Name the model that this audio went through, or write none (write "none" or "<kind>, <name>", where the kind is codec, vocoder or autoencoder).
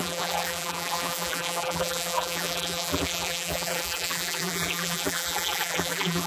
vocoder, BigVGAN v2